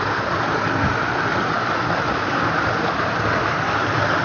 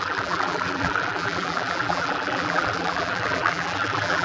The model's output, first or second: second